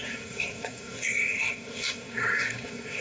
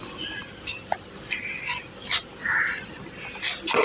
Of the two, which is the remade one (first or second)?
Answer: first